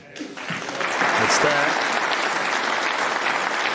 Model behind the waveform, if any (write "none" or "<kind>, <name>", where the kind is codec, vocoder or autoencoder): none